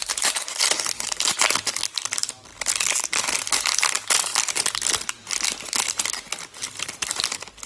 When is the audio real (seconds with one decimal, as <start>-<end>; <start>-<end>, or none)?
0.0-7.7